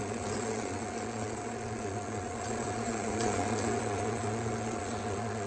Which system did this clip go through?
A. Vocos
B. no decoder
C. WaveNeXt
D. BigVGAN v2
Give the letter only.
A